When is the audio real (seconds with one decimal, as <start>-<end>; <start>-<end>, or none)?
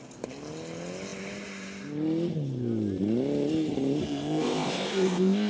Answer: 0.0-4.0